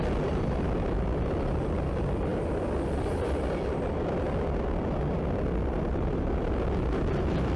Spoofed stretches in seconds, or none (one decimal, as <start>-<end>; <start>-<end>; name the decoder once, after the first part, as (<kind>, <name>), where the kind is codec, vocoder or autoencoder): none